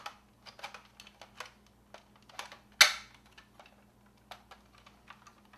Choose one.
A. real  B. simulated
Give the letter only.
A